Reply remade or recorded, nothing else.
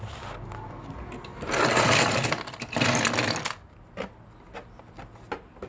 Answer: recorded